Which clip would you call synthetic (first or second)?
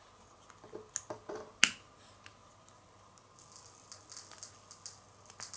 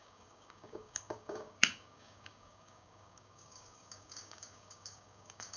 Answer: second